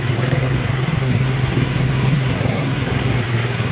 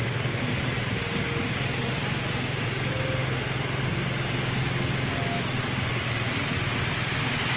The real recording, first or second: second